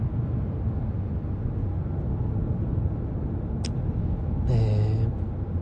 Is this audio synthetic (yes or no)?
no